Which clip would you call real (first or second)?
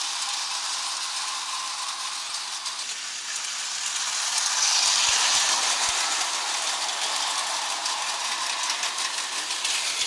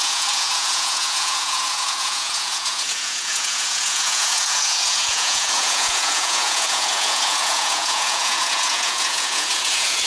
first